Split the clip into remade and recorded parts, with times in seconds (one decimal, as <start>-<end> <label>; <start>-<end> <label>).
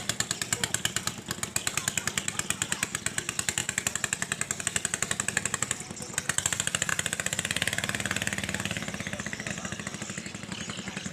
0.0-11.1 recorded